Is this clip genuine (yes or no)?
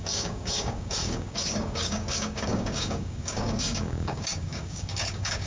no